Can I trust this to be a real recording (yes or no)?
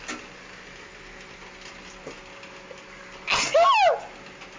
yes